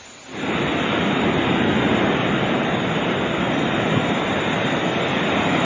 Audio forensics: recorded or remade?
recorded